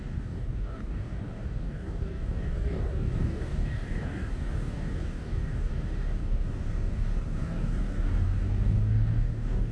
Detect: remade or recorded remade